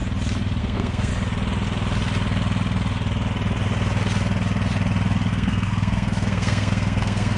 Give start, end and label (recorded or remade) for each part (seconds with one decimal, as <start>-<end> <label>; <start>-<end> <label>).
0.0-0.6 recorded; 0.6-1.1 remade; 1.1-5.3 recorded; 5.3-7.4 remade